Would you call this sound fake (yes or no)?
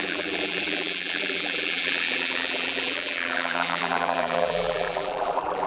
yes